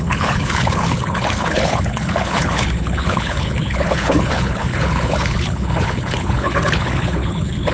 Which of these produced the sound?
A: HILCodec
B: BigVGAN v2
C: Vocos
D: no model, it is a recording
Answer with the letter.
A